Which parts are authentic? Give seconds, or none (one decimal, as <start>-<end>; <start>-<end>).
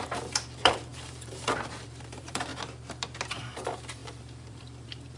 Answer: 2.5-3.3